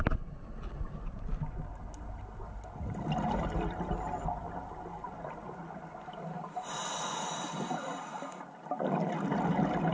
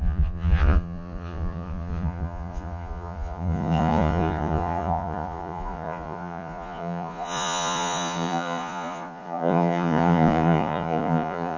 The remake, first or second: second